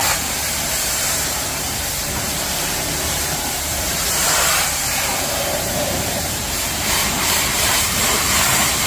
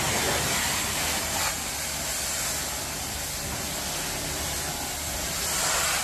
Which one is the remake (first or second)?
first